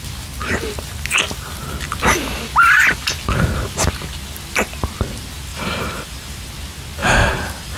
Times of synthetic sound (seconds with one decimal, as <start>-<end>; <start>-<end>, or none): 5.5-6.5; 7.0-7.8